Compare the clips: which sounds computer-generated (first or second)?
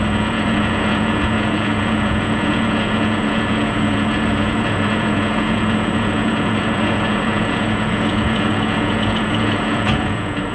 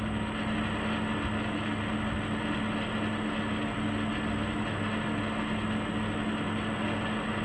first